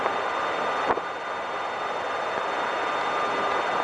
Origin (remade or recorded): recorded